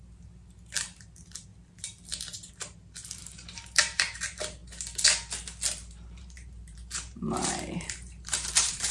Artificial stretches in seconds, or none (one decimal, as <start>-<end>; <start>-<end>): 0.0-1.5; 2.5-4.6; 6.2-8.9